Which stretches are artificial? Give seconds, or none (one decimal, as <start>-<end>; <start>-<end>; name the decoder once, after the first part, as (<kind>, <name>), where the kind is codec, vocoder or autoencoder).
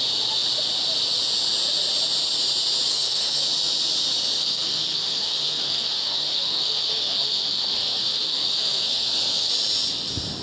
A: 2.9-3.4 (codec, SNAC); 4.4-9.5